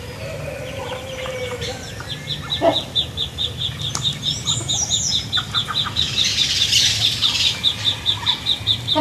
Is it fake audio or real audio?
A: real